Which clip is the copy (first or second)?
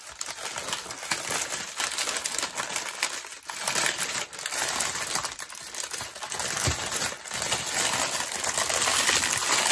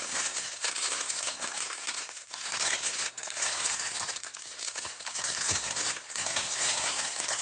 second